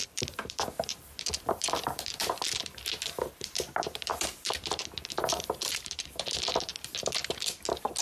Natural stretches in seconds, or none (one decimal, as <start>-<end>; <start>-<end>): 7.2-8.0